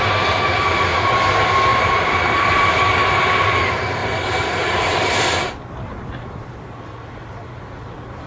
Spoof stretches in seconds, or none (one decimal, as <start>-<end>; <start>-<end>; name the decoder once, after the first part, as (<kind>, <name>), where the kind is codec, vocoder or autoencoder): 1.7-2.7 (vocoder, BigVGAN v2); 4.0-7.1